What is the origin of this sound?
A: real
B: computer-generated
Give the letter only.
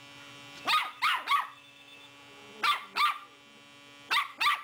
A